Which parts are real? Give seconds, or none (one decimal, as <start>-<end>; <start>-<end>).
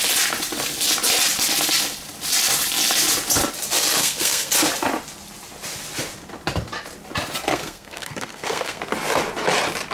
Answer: 0.0-4.0; 4.5-7.5; 8.8-9.9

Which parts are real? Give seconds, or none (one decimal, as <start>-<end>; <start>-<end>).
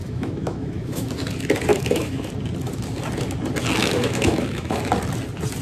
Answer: 1.1-1.7; 2.3-3.8; 4.8-5.6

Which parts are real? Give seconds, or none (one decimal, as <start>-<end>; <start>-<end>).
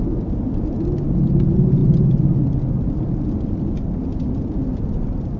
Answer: 0.0-5.4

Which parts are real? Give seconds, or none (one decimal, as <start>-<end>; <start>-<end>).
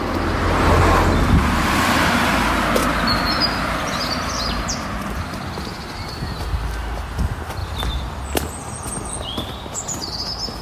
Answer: 0.0-2.8; 6.0-7.6; 8.1-10.6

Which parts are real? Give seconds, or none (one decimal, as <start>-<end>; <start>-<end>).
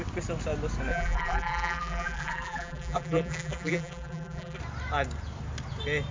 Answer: 0.0-0.9; 4.6-6.1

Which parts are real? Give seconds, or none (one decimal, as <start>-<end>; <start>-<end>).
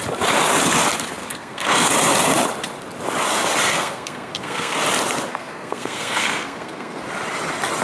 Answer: 0.0-1.2; 1.9-3.7; 4.8-5.3; 7.0-7.8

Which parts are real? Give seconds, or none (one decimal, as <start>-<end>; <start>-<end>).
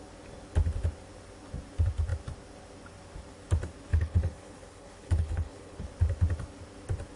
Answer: 0.0-3.9; 5.9-7.2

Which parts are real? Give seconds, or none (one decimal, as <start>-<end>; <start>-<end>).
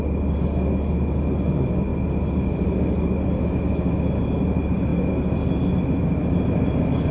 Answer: 0.0-7.1